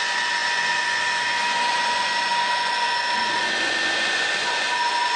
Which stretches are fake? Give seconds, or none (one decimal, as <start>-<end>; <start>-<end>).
0.0-5.2